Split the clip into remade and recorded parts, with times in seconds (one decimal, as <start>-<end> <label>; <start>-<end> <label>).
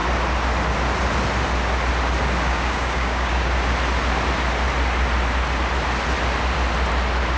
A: 0.0-2.5 recorded; 2.5-3.5 remade; 3.5-7.4 recorded